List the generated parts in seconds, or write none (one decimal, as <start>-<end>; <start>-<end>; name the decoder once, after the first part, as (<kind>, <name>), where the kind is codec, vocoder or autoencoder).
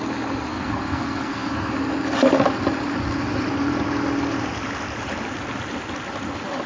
0.5-1.7 (codec, SNAC)